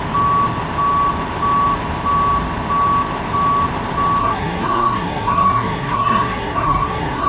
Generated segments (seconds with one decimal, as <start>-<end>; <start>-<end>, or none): 4.2-7.3